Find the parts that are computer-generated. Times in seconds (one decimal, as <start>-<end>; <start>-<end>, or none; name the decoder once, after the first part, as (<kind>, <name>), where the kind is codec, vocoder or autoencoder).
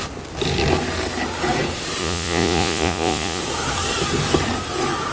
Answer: 2.0-3.4 (vocoder, Vocos)